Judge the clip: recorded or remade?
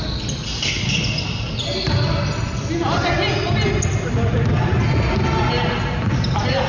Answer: recorded